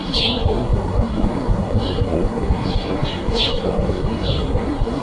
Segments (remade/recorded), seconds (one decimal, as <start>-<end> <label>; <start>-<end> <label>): 0.0-5.0 remade